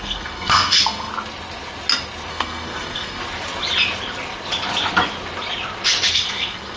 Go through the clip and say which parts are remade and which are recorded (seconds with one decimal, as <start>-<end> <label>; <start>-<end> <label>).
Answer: 0.0-1.1 remade; 1.1-2.3 recorded; 2.3-3.2 remade; 3.2-6.1 recorded; 6.1-6.8 remade